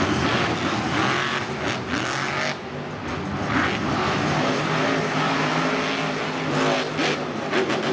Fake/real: real